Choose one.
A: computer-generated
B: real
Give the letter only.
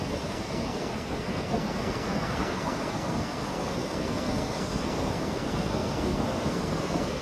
A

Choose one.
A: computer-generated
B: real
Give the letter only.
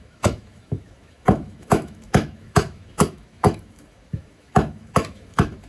A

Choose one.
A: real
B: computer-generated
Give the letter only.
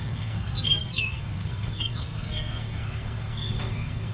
B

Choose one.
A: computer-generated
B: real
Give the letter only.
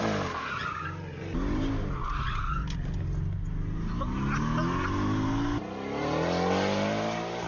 B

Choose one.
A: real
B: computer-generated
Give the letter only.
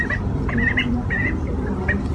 A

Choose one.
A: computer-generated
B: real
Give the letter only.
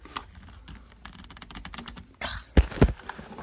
B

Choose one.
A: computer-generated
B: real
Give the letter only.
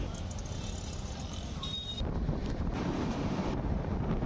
B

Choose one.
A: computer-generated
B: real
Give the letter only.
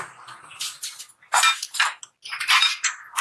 B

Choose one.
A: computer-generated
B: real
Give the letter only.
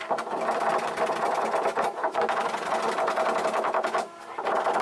B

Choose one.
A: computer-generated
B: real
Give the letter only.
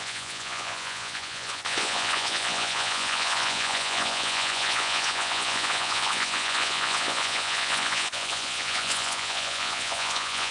A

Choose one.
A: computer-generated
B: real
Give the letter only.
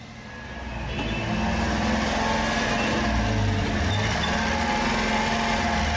B